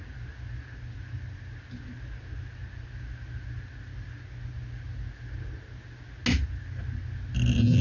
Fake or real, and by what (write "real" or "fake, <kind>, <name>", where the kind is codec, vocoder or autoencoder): real